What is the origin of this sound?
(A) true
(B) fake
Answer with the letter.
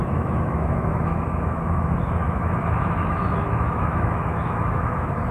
B